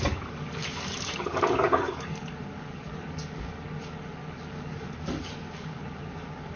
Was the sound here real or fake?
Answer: fake